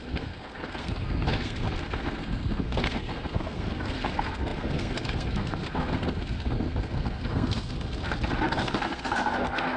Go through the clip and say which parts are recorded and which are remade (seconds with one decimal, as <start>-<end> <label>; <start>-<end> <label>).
0.0-9.8 remade

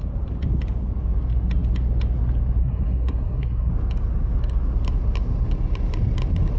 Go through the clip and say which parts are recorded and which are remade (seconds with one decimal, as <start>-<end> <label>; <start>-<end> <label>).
0.0-2.6 recorded; 2.6-3.7 remade; 3.7-6.6 recorded

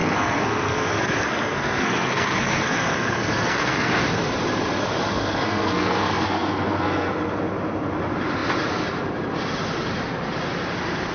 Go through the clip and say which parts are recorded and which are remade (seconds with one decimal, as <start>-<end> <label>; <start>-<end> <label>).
0.0-3.9 remade; 3.9-5.1 recorded; 5.1-7.1 remade; 7.1-11.1 recorded

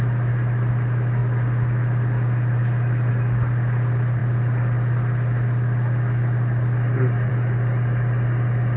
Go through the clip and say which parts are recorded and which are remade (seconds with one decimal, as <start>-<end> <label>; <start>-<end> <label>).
0.0-8.8 recorded

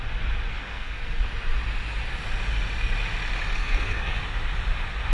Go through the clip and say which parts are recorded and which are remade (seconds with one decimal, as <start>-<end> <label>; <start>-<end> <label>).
0.0-0.5 recorded; 0.5-1.2 remade; 1.2-3.6 recorded; 3.6-4.2 remade; 4.2-5.1 recorded

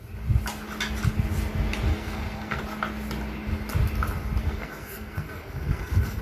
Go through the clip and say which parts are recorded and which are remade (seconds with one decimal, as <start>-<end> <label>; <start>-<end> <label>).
0.0-1.9 recorded; 1.9-2.6 remade; 2.6-4.4 recorded; 4.4-6.2 remade